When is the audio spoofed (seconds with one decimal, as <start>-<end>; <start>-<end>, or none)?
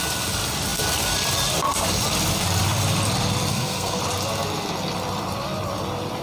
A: 3.5-4.0